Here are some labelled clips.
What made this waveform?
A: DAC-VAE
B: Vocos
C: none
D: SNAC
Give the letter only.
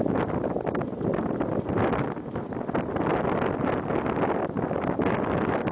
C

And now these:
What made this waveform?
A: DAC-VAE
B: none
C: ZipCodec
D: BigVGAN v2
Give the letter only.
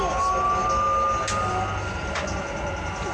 B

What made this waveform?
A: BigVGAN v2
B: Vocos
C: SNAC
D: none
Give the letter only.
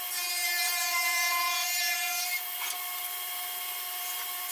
D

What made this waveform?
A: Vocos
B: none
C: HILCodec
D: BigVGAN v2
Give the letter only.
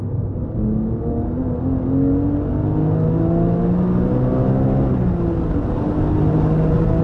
B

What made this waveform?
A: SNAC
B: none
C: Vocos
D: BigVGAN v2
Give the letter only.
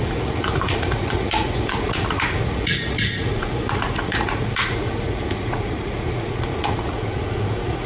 C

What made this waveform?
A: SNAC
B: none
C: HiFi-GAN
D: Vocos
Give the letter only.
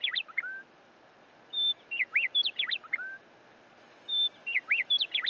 B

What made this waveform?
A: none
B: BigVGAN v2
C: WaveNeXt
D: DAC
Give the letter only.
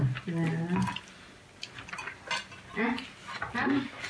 A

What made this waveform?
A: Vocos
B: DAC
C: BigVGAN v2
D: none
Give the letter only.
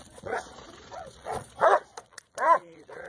A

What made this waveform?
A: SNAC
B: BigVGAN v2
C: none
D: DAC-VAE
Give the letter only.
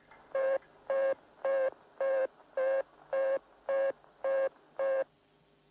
C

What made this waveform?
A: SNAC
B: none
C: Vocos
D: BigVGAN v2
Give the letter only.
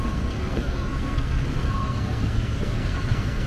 A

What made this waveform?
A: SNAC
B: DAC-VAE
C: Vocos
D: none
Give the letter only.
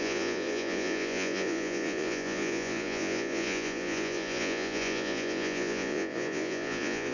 C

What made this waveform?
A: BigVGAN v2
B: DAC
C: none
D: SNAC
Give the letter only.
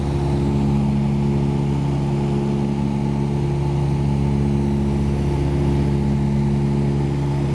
C